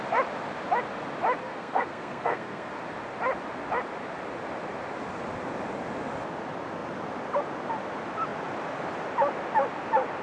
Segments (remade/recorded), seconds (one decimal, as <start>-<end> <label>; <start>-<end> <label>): 0.0-1.4 recorded; 1.4-2.7 remade; 2.7-10.2 recorded